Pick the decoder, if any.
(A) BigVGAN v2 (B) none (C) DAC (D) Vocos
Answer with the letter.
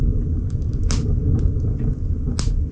B